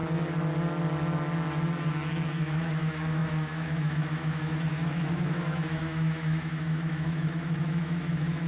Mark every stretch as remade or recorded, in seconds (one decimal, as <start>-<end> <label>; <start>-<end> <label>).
0.0-1.9 recorded; 1.9-8.5 remade